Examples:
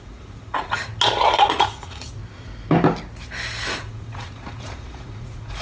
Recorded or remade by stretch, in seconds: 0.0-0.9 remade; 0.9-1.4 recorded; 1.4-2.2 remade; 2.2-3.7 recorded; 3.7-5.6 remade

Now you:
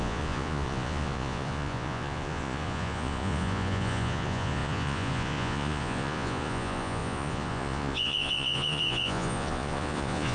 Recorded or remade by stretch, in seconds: 0.0-10.3 remade

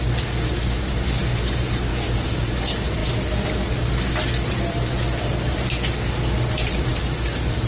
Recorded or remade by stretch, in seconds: 0.0-1.9 recorded; 1.9-2.6 remade; 2.6-7.7 recorded

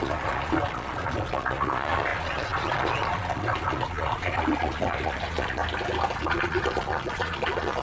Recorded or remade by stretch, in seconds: 0.0-5.6 remade; 5.6-6.2 recorded; 6.2-7.8 remade

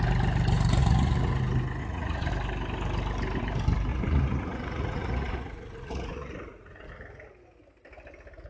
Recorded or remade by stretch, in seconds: 0.0-0.8 recorded; 0.8-1.4 remade; 1.4-1.8 recorded; 1.8-2.3 remade; 2.3-3.9 recorded; 3.9-6.9 remade; 6.9-8.5 recorded